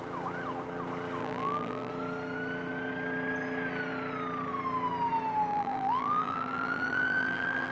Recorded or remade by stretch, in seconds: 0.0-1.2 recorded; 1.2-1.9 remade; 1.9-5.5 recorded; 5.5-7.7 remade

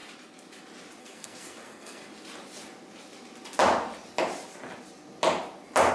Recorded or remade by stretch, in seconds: 0.0-1.0 recorded; 1.0-2.1 remade; 2.1-5.9 recorded

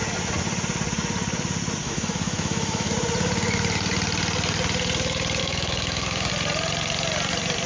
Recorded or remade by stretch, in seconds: 0.0-1.8 recorded; 1.8-2.9 remade; 2.9-5.4 recorded; 5.4-6.3 remade; 6.3-7.7 recorded

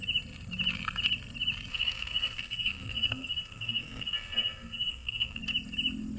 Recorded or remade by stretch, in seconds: 0.0-1.7 recorded; 1.7-5.4 remade; 5.4-6.2 recorded

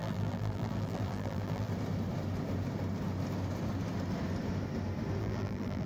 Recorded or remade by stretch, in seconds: 0.0-1.7 remade; 1.7-5.2 recorded; 5.2-5.9 remade

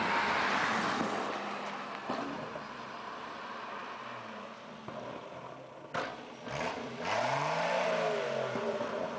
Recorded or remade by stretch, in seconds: 0.0-9.2 recorded

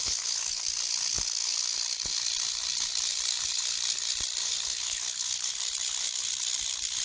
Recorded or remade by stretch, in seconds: 0.0-0.6 remade; 0.6-4.4 recorded; 4.4-5.5 remade; 5.5-7.0 recorded